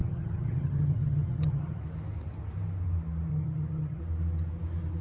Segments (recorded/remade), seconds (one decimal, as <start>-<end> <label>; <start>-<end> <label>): 0.0-1.8 remade; 1.8-3.3 recorded; 3.3-4.0 remade; 4.0-5.0 recorded